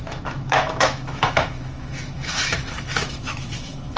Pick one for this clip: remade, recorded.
remade